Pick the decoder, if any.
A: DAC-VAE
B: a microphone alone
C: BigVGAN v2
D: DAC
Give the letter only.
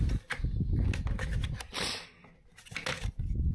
B